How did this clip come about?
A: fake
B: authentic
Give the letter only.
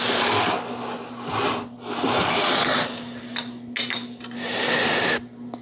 B